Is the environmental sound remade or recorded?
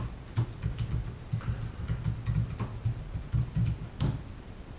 recorded